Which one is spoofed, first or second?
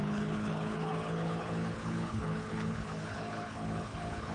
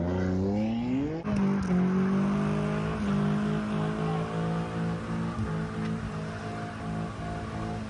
first